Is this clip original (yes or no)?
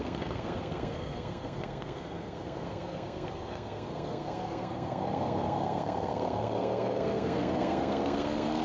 no